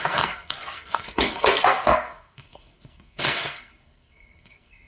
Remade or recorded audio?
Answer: remade